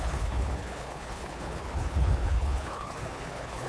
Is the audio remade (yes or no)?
yes